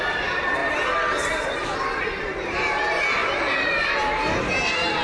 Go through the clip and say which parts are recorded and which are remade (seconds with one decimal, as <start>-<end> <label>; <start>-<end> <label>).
0.0-5.0 recorded